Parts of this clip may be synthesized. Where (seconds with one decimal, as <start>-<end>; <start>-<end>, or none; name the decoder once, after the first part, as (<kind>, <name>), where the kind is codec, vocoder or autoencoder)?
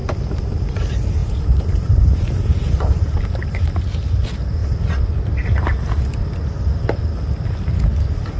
1.2-3.7 (vocoder, BigVGAN v2)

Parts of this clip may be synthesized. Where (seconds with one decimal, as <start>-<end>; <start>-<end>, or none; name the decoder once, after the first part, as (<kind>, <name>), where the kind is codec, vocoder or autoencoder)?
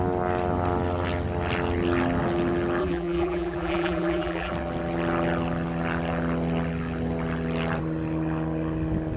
2.8-4.5 (vocoder, BigVGAN v2)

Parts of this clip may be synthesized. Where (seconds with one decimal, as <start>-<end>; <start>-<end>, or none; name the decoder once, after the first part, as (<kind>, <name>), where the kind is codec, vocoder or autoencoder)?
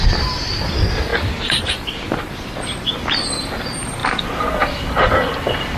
1.1-2.3 (vocoder, BigVGAN v2)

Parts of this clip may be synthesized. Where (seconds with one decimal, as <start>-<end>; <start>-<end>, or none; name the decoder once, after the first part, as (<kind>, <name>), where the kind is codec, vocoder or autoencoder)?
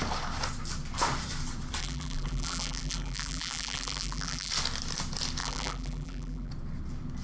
1.8-4.5 (vocoder, BigVGAN v2); 5.4-6.5